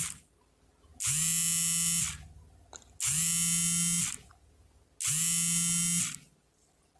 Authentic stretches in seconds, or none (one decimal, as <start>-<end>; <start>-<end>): 0.0-7.0

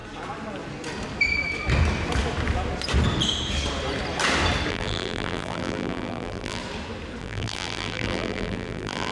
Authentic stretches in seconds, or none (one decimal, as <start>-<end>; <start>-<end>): 0.0-4.7; 6.6-7.2

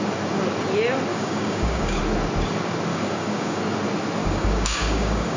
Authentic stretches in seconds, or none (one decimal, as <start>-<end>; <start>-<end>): 0.0-1.1; 2.0-2.9; 3.6-4.2

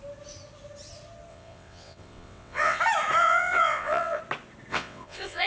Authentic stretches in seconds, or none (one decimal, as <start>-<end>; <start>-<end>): 0.0-1.3; 2.8-3.2; 4.2-4.7

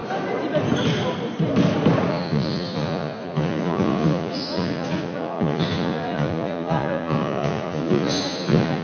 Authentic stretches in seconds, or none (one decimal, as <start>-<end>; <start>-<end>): 0.0-2.1

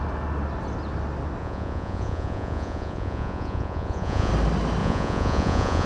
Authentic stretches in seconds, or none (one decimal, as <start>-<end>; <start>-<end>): 0.0-1.4; 4.3-4.8

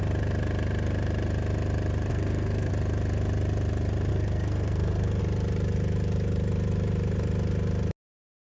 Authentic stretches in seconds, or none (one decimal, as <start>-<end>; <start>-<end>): 0.0-2.1; 2.7-4.1; 5.2-8.4